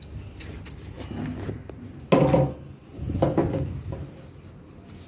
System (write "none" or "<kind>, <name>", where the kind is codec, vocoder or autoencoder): none